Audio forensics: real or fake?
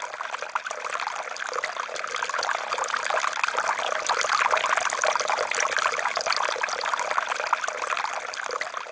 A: real